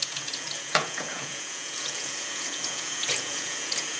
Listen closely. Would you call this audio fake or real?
fake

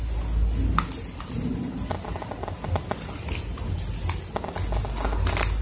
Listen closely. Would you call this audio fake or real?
real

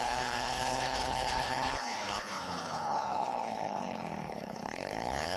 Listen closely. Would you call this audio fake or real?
fake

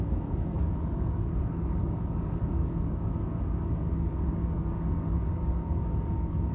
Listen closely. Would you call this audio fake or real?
fake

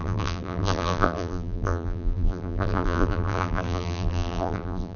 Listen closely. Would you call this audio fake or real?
fake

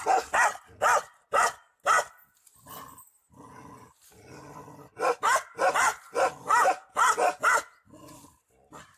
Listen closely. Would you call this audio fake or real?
real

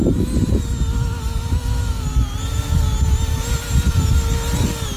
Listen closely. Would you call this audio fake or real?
real